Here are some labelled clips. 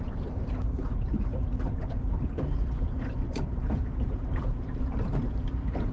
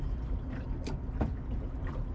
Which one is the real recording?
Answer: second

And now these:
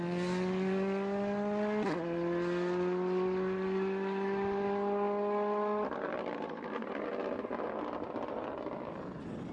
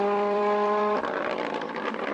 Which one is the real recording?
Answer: first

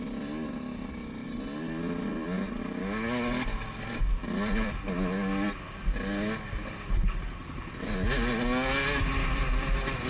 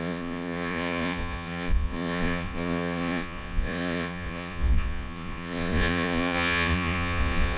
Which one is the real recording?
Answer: first